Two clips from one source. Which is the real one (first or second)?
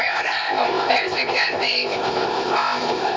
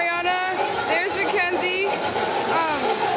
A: second